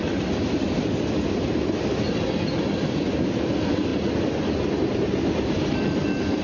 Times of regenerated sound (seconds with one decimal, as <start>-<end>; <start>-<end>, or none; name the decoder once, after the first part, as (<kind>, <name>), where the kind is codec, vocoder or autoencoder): none